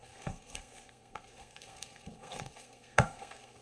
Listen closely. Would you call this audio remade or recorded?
remade